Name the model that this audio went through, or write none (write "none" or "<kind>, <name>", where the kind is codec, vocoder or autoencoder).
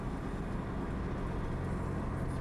none